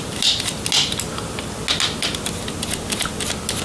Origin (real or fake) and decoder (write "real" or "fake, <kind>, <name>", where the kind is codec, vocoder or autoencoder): real